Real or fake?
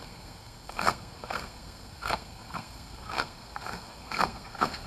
fake